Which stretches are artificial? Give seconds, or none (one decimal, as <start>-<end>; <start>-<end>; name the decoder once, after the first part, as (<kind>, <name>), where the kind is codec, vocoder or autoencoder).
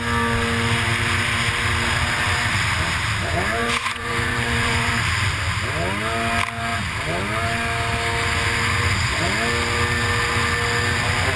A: 3.6-4.9 (vocoder, Vocos)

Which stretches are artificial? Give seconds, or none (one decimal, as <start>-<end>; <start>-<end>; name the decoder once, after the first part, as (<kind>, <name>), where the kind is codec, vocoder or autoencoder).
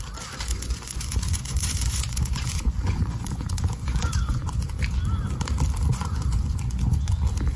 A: 0.5-4.7 (vocoder, Vocos); 5.9-7.1